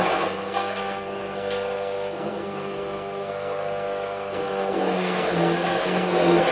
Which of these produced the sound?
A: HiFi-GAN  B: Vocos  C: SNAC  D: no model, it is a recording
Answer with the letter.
C